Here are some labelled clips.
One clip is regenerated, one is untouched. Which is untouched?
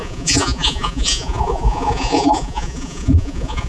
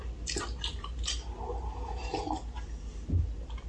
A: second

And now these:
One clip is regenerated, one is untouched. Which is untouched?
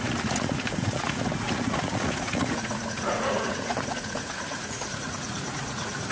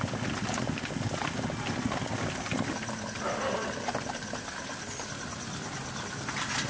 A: second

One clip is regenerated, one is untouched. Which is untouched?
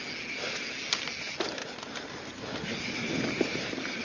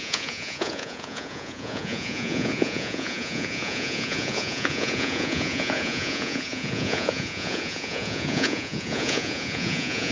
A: first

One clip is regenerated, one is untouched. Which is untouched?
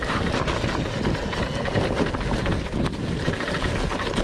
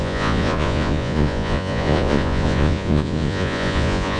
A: first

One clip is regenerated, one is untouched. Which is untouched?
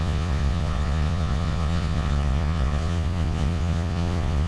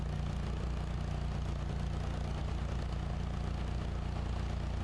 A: second